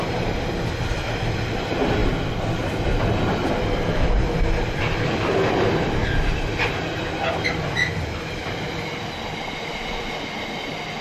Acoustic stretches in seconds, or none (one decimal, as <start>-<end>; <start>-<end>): 0.0-11.0